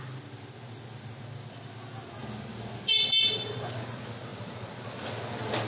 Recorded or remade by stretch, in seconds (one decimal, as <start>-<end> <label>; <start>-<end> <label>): 0.0-5.7 recorded